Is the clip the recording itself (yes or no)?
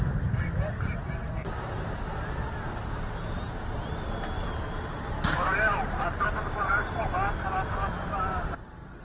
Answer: yes